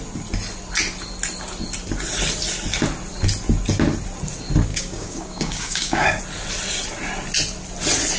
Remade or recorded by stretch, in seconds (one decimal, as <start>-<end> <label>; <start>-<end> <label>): 0.0-4.7 recorded; 4.7-6.2 remade; 6.2-8.2 recorded

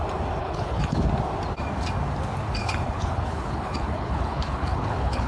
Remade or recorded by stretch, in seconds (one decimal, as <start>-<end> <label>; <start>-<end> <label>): 0.0-0.4 recorded; 0.4-1.0 remade; 1.0-2.6 recorded; 2.6-5.3 remade

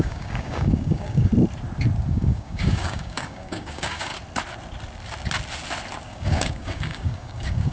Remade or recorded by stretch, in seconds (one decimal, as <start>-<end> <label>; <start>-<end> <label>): 0.0-1.3 remade; 1.3-2.1 recorded; 2.1-4.1 remade; 4.1-6.0 recorded; 6.0-7.7 remade

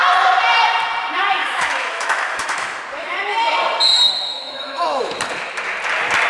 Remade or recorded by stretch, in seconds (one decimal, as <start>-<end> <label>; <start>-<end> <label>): 0.0-1.4 recorded; 1.4-2.8 remade; 2.8-4.3 recorded; 4.3-5.1 remade; 5.1-6.3 recorded